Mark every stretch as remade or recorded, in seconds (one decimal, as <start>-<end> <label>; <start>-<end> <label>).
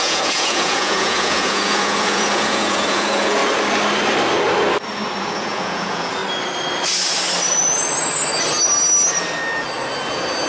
0.0-3.4 remade; 3.4-5.2 recorded; 5.2-6.2 remade; 6.2-10.5 recorded